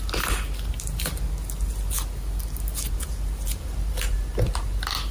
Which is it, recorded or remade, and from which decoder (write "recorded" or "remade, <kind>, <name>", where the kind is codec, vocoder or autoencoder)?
recorded